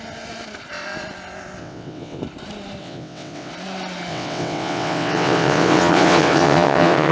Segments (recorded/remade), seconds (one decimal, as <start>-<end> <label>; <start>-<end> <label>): 0.0-1.6 recorded; 1.6-2.2 remade; 2.2-2.8 recorded; 2.8-3.5 remade; 3.5-4.1 recorded; 4.1-7.1 remade

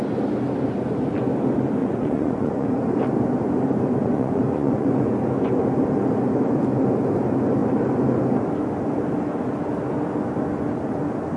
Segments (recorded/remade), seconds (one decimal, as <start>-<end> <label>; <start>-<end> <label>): 0.0-1.8 recorded; 1.8-2.8 remade; 2.8-4.0 recorded; 4.0-5.1 remade; 5.1-11.4 recorded